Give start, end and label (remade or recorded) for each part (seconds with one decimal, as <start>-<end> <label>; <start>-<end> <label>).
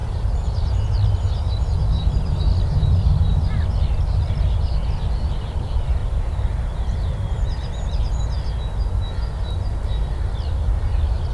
0.0-0.7 remade; 0.7-6.0 recorded; 6.0-8.1 remade; 8.1-11.3 recorded